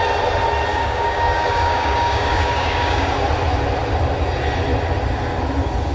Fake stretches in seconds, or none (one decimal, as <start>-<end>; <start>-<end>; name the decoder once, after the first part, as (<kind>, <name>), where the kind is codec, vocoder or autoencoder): 0.7-3.1 (codec, DAC)